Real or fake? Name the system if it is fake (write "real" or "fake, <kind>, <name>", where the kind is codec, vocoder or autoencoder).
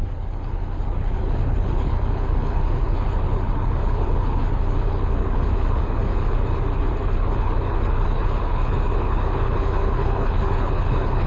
fake, codec, HILCodec